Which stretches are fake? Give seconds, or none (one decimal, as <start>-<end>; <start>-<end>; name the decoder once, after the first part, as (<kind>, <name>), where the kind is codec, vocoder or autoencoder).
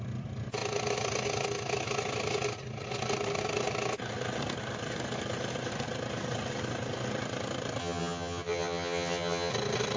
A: 7.8-9.5 (vocoder, HiFi-GAN)